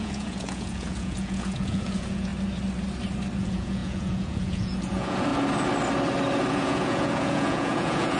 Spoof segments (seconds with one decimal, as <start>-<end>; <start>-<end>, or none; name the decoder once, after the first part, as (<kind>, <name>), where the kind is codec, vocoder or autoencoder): 0.0-2.3 (vocoder, Vocos); 3.4-5.3; 6.5-8.2